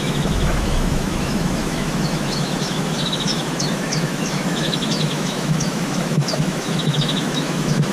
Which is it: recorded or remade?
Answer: remade